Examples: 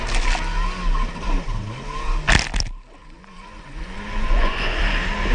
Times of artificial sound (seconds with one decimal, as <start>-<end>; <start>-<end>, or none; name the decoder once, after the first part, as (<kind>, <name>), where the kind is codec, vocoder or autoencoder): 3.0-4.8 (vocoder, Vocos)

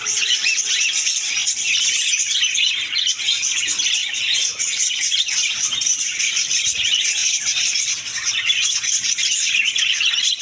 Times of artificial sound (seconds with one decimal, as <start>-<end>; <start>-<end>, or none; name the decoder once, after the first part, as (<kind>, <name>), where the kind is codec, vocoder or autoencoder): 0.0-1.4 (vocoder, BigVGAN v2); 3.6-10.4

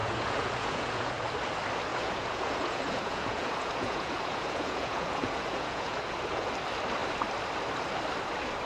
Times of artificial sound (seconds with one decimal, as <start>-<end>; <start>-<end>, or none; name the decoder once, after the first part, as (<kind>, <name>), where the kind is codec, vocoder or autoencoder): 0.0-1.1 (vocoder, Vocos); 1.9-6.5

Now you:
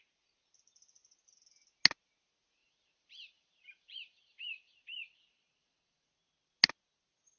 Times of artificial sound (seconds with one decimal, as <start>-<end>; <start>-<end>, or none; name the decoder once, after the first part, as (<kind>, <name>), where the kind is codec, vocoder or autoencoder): 2.6-6.1 (vocoder, BigVGAN v2)

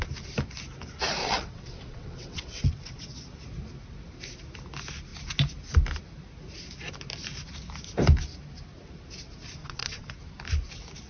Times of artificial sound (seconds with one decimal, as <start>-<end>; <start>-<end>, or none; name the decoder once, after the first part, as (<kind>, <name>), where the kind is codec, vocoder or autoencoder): 1.2-3.0 (vocoder, WaveNeXt); 9.6-10.1

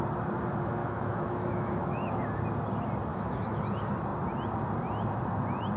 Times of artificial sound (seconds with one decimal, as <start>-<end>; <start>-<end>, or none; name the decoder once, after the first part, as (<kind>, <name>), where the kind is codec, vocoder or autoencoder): 0.8-2.2 (autoencoder, DAC-VAE); 3.1-3.6

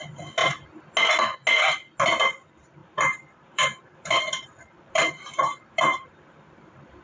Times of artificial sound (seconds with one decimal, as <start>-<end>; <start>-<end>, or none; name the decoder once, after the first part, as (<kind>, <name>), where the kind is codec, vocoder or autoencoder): 2.8-7.0 (vocoder, BigVGAN v2)